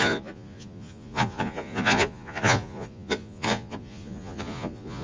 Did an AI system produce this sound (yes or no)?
yes